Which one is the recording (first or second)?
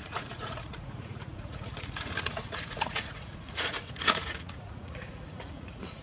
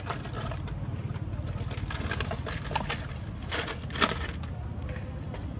second